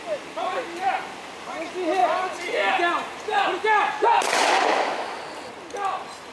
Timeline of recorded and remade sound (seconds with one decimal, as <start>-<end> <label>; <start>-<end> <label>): 0.0-4.7 recorded; 4.7-5.2 remade; 5.2-6.3 recorded